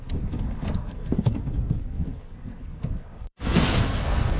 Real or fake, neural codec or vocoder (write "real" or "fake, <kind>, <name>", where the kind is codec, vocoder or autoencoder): fake, codec, SNAC